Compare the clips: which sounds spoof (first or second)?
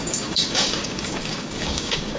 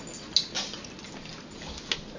first